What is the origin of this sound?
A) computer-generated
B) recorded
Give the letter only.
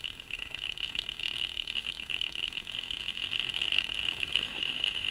A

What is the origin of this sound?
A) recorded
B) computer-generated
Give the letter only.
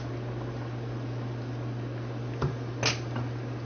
A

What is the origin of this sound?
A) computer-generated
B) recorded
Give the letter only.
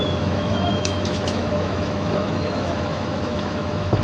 A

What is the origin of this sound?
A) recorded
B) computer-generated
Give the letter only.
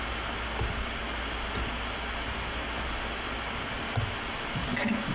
A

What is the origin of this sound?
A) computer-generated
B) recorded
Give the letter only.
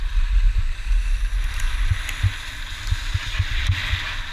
B